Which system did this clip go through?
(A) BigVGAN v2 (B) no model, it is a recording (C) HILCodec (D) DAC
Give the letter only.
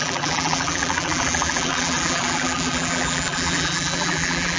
A